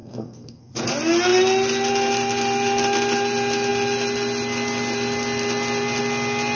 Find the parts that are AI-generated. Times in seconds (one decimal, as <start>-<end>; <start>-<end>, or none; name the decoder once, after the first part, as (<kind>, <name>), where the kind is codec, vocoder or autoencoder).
0.0-0.7 (codec, SNAC)